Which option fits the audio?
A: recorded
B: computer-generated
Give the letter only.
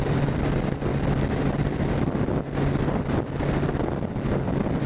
A